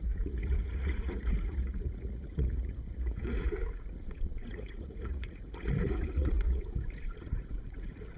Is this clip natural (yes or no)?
no